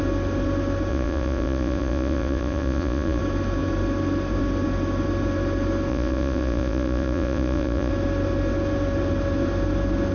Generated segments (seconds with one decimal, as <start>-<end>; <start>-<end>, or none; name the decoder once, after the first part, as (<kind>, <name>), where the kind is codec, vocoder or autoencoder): 0.9-3.2 (vocoder, Vocos); 5.9-7.9